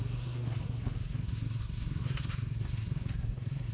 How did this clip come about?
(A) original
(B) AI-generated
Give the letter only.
B